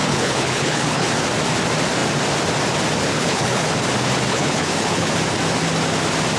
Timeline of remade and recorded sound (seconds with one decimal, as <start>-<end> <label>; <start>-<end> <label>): 0.0-1.1 remade; 1.1-3.1 recorded; 3.1-3.7 remade; 3.7-4.3 recorded; 4.3-5.1 remade; 5.1-6.4 recorded